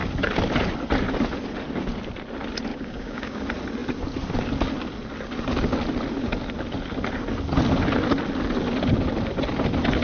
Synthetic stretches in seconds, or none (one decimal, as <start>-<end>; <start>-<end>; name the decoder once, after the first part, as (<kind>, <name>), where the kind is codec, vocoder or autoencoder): 2.7-3.4 (codec, DAC)